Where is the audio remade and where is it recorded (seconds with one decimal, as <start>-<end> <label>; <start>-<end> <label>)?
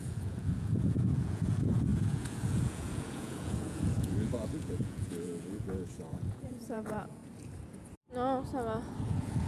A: 0.0-7.2 remade; 7.2-9.0 recorded; 9.0-9.5 remade